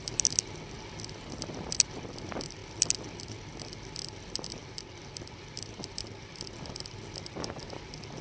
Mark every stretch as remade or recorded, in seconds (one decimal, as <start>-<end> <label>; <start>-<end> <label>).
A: 0.0-8.2 recorded